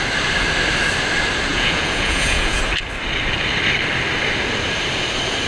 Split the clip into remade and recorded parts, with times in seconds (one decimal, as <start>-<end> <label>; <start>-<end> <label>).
0.0-1.5 recorded; 1.5-2.6 remade; 2.6-5.5 recorded